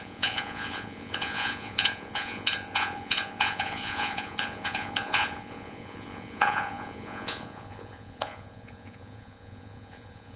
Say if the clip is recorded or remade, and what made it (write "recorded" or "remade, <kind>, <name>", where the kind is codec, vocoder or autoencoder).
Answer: remade, vocoder, Vocos